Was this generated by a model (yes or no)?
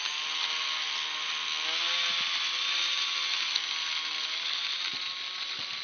no